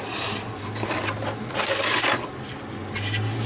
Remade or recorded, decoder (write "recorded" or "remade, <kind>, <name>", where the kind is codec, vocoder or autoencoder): recorded